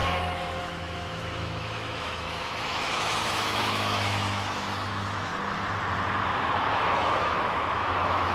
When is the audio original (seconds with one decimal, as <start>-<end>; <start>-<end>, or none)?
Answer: 5.3-6.7